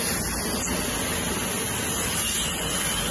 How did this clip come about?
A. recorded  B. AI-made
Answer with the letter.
A